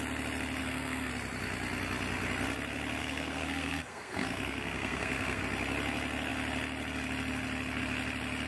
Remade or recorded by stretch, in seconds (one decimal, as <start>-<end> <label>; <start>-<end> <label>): 0.0-0.6 recorded; 0.6-1.1 remade; 1.1-3.0 recorded; 3.0-5.4 remade; 5.4-8.5 recorded